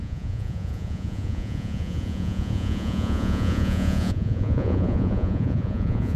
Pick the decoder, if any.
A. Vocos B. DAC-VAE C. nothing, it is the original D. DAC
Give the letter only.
A